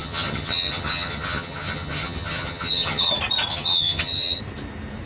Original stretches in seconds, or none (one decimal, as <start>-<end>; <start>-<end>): 3.1-3.5; 4.4-5.1